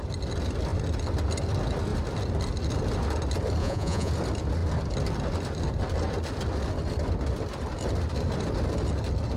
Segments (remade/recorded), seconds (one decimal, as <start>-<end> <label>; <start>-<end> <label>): 0.0-3.6 recorded; 3.6-4.1 remade; 4.1-9.4 recorded